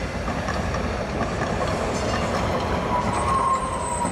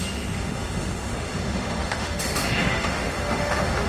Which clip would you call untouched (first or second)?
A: first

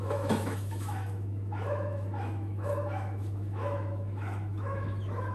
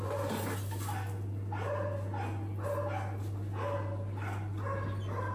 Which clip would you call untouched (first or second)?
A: second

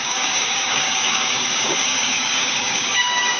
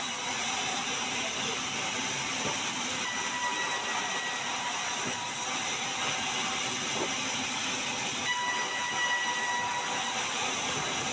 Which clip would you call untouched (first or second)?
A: second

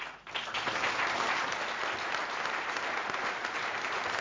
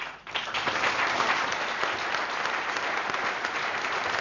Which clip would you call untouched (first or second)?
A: first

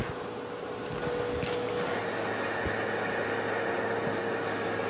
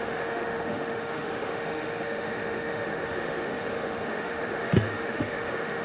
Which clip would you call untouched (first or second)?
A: first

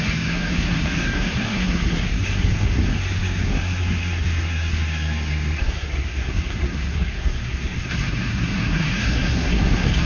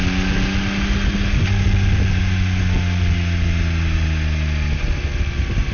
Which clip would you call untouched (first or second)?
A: second